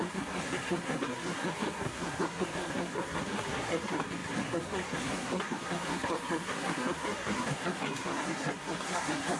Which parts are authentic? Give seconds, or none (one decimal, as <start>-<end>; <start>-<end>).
none